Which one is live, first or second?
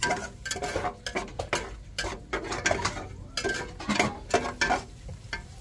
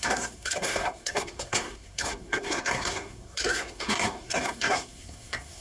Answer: first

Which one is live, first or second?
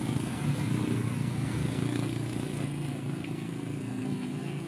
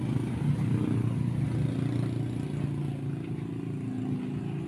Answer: second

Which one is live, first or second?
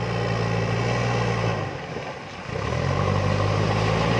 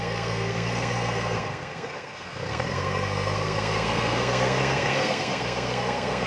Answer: first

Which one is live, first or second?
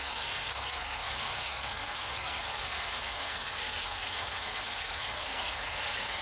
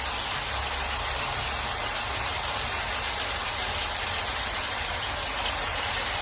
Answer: second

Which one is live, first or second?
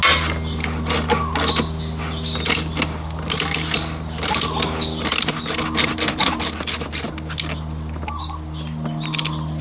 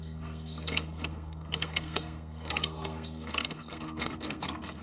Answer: first